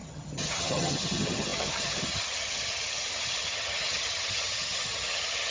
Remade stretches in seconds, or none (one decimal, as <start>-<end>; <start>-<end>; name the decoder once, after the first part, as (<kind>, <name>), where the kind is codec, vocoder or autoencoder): 0.0-5.5 (vocoder, HiFi-GAN)